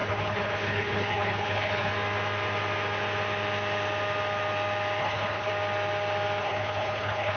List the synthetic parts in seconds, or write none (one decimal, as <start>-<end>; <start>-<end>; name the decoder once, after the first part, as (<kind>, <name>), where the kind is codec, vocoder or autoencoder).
0.0-1.9 (codec, HILCodec); 5.0-5.5; 6.4-7.4